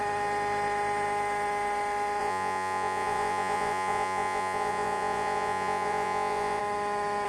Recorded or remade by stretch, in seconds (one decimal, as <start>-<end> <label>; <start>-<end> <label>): 0.0-2.2 recorded; 2.2-6.6 remade; 6.6-7.3 recorded